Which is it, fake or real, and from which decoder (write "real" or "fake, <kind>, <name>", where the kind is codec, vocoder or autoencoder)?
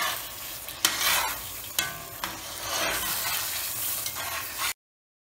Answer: real